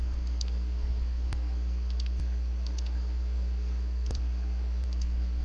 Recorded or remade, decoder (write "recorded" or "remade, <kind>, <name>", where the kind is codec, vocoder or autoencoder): remade, codec, SNAC